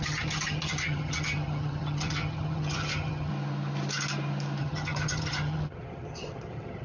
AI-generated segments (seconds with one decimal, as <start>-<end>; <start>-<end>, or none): 0.0-3.3; 4.6-6.8